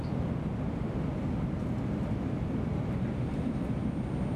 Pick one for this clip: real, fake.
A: real